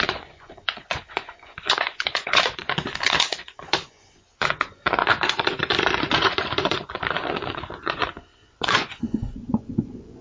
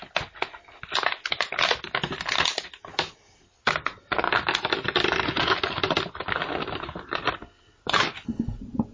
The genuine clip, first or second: second